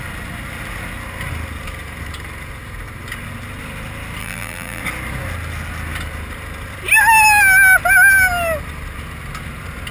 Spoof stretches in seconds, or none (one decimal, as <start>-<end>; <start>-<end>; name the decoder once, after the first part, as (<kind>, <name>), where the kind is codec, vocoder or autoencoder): 4.2-4.8 (vocoder, BigVGAN v2)